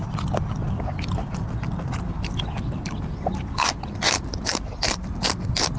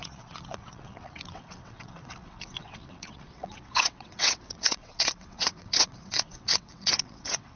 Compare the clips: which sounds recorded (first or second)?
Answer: first